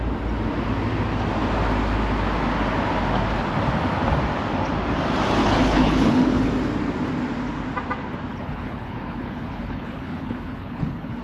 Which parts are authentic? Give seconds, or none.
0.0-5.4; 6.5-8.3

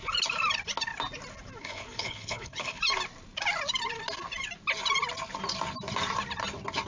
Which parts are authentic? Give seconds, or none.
0.0-1.6; 2.8-6.9

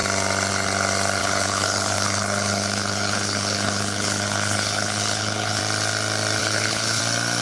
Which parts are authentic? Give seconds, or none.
0.0-1.2; 5.6-6.4; 7.0-7.4

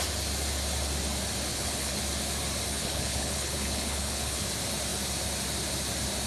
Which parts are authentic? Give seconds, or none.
0.0-1.5; 2.0-2.7; 4.5-6.3

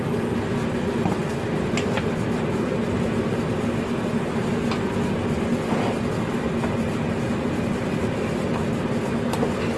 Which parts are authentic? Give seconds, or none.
0.0-9.8